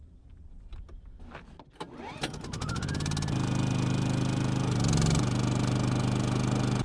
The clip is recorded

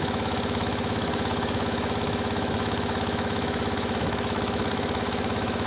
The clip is remade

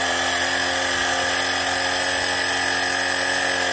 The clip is recorded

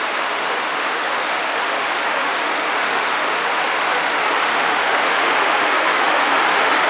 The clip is remade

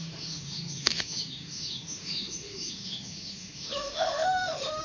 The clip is remade